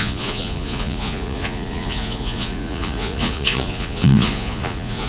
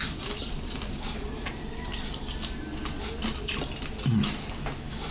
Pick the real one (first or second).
second